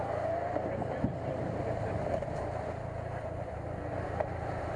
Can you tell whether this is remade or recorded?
recorded